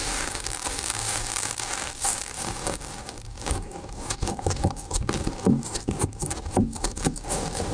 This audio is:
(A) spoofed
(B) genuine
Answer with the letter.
A